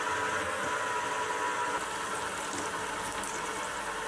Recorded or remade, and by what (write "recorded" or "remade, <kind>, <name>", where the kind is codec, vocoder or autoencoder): recorded